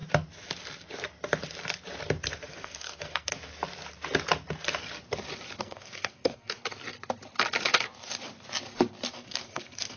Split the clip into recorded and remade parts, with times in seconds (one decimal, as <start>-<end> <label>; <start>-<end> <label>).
0.0-2.5 recorded; 2.5-3.3 remade; 3.3-5.6 recorded; 5.6-6.6 remade; 6.6-9.1 recorded; 9.1-10.0 remade